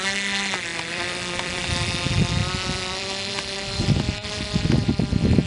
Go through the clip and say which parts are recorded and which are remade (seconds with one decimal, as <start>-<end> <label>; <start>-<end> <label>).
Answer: 0.0-0.7 recorded; 0.7-1.6 remade; 1.6-2.4 recorded; 2.4-4.9 remade; 4.9-5.5 recorded